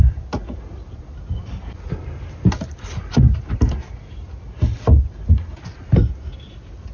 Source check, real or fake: real